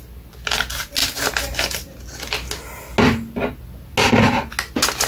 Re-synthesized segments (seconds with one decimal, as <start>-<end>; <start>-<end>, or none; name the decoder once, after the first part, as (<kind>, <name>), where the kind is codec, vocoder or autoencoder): none